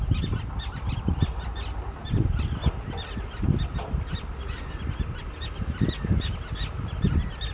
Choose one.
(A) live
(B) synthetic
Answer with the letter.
A